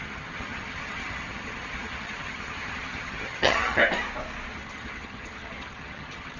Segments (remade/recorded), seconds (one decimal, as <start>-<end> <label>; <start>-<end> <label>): 0.0-3.8 remade; 3.8-4.5 recorded; 4.5-6.4 remade